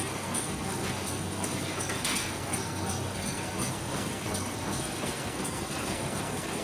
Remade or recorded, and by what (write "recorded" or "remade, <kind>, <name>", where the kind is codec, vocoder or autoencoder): remade, codec, SNAC